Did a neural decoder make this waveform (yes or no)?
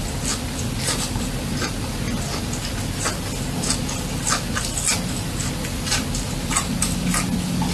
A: no